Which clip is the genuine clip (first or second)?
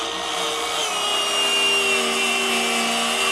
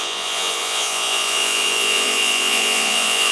first